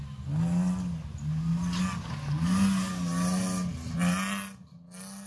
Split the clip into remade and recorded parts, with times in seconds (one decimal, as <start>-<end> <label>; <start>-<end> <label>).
0.0-5.3 recorded